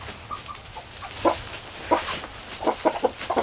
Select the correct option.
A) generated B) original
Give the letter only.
B